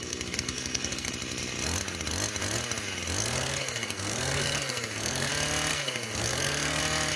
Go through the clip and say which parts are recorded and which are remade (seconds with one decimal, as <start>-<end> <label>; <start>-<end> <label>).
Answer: 0.0-1.1 remade; 1.1-3.2 recorded; 3.2-5.3 remade; 5.3-5.7 recorded; 5.7-6.8 remade; 6.8-7.2 recorded